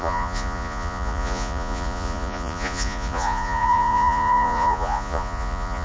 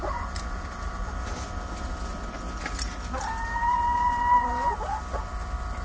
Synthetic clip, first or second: first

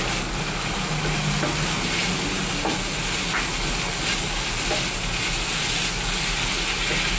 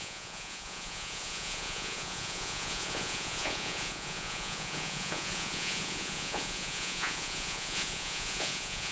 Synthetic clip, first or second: second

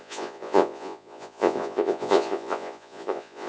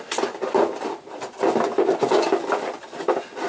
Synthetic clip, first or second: first